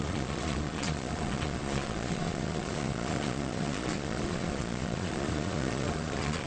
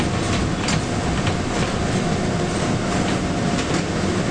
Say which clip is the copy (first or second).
first